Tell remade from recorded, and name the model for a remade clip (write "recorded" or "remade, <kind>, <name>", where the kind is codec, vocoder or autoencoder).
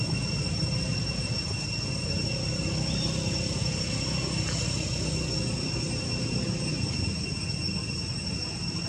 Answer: recorded